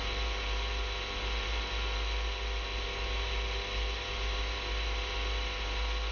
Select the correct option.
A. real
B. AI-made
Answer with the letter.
A